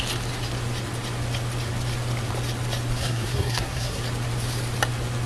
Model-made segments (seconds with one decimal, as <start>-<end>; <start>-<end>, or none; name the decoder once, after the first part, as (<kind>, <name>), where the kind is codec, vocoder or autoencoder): 3.0-4.0 (codec, SNAC)